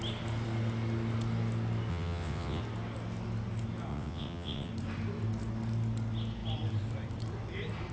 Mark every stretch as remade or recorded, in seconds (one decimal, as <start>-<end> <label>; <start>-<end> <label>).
0.0-1.9 recorded; 1.9-2.6 remade; 2.6-3.9 recorded; 3.9-4.7 remade; 4.7-7.9 recorded